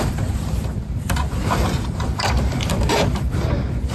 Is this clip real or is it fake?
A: fake